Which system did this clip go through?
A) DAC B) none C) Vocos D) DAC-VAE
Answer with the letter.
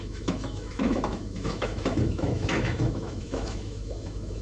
D